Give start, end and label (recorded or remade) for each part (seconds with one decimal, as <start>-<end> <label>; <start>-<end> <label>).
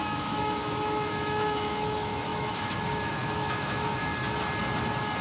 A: 0.0-4.1 remade; 4.1-5.2 recorded